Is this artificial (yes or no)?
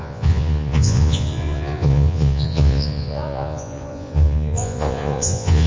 yes